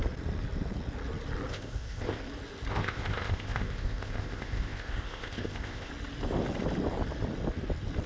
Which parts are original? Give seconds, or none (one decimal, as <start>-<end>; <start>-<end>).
0.0-1.5; 2.2-2.7; 5.9-8.1